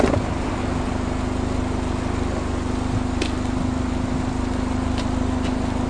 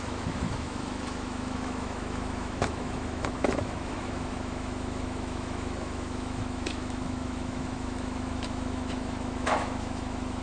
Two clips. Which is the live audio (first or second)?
first